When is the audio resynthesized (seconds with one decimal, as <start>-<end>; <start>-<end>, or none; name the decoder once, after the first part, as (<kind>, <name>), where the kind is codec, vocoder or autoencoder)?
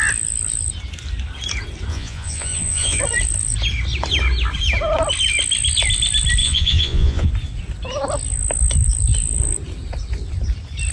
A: 1.9-3.0 (vocoder, Vocos); 6.4-7.3